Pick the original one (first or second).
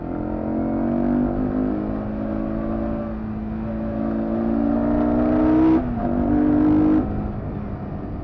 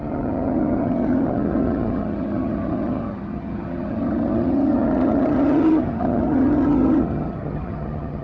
first